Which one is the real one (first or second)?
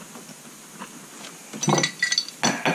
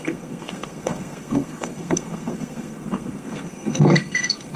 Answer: first